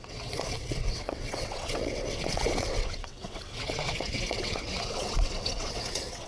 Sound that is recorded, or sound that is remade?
remade